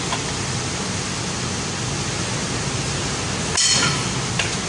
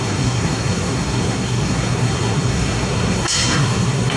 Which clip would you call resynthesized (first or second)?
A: second